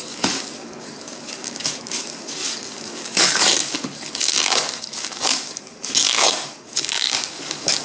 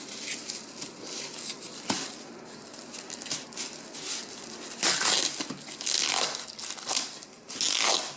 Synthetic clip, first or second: first